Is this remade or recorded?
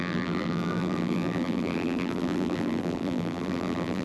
remade